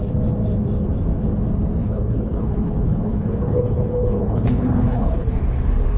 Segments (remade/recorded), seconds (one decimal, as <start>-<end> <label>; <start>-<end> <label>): 0.0-1.8 recorded; 1.8-5.4 remade; 5.4-6.0 recorded